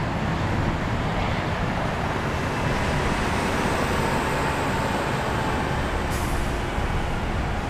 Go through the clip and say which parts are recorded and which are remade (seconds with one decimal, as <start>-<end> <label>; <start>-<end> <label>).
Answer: 0.0-1.1 recorded; 1.1-1.7 remade; 1.7-7.7 recorded